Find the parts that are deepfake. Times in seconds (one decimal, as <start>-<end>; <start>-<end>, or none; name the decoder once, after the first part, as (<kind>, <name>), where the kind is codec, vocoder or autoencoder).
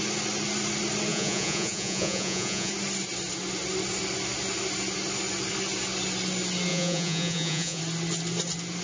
1.1-2.7 (vocoder, Vocos); 6.7-7.8